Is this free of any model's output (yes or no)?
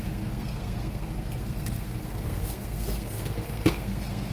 no